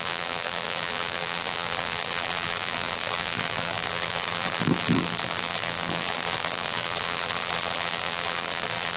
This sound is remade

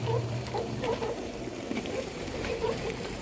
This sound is remade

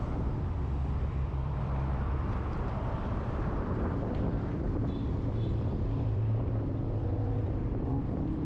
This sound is remade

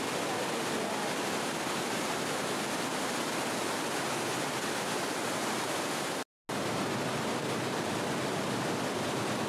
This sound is recorded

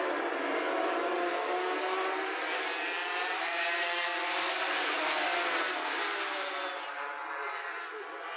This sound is recorded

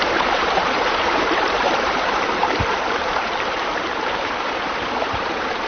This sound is remade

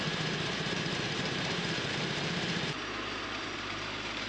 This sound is remade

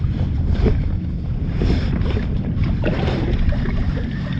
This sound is remade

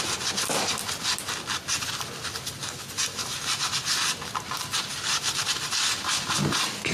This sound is recorded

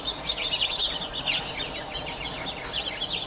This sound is recorded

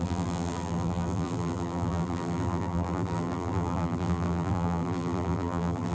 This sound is remade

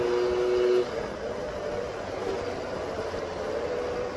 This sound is recorded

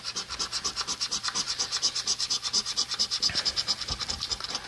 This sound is remade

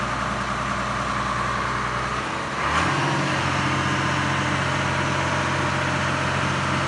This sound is recorded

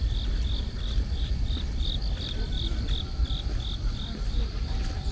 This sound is remade